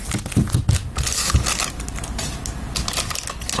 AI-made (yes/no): no